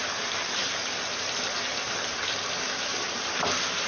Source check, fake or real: fake